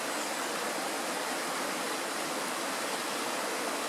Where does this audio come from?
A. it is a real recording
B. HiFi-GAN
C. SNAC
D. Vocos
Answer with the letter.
A